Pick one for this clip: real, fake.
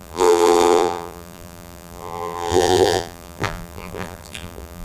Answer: fake